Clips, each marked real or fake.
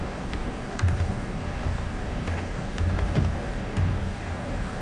fake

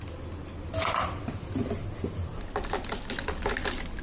real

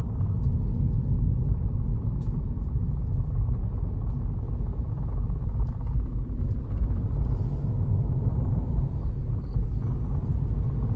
real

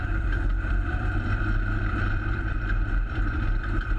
fake